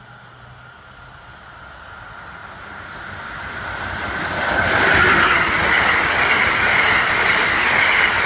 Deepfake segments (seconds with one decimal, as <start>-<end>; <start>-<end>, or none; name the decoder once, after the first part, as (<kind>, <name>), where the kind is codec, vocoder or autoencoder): none